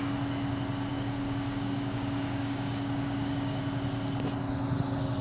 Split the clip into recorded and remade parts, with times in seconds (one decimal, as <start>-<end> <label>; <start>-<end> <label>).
0.0-0.9 recorded; 0.9-3.6 remade; 3.6-5.2 recorded